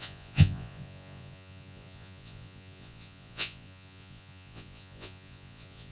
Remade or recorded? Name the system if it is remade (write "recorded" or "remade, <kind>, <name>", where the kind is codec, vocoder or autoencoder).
remade, vocoder, Vocos